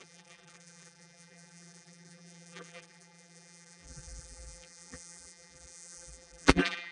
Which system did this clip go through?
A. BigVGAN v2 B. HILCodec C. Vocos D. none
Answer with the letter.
A